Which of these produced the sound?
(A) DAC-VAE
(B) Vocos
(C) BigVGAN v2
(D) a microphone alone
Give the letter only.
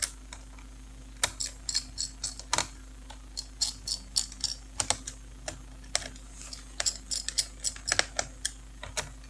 D